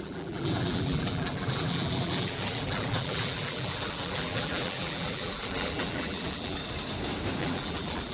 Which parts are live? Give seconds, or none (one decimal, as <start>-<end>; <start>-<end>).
6.6-7.4